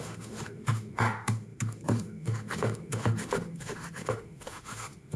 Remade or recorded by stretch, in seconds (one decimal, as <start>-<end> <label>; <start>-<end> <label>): 0.0-5.2 remade